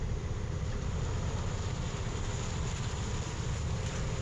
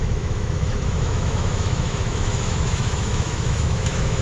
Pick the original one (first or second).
first